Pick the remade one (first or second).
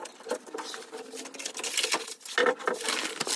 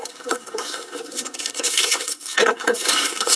second